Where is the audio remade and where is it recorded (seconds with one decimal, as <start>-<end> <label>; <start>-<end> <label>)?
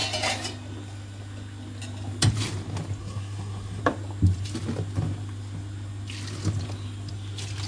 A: 0.0-3.0 recorded; 3.0-3.8 remade; 3.8-7.7 recorded